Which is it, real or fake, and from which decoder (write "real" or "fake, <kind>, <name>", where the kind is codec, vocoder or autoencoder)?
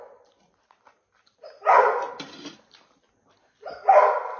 real